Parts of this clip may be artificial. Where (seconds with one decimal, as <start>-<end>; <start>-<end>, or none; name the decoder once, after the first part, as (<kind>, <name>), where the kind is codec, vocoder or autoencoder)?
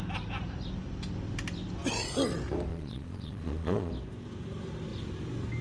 2.7-3.9 (vocoder, Vocos)